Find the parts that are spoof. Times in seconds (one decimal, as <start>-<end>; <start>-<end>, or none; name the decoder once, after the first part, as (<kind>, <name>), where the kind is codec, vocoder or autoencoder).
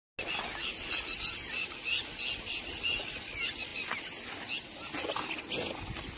none